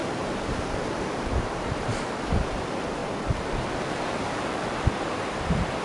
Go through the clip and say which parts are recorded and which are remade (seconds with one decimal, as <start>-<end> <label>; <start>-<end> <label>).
0.0-2.1 remade; 2.1-3.0 recorded; 3.0-4.9 remade; 4.9-5.8 recorded